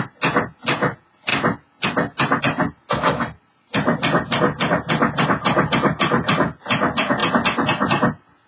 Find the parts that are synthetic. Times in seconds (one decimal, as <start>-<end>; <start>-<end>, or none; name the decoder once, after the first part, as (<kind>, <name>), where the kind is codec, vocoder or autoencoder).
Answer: none